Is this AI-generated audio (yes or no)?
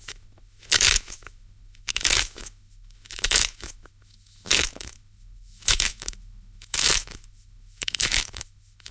yes